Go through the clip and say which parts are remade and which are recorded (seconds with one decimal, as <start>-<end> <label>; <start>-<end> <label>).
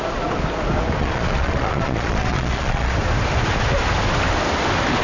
0.0-1.0 recorded; 1.0-2.9 remade; 2.9-5.0 recorded